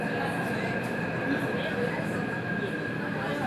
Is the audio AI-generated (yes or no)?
no